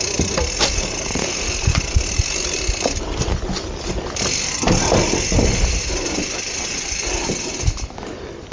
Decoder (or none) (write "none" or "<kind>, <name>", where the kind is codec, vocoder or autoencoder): none